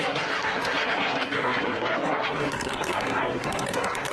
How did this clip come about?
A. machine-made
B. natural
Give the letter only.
A